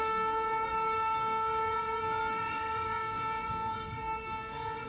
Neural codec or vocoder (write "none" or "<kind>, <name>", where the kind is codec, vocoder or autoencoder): codec, SNAC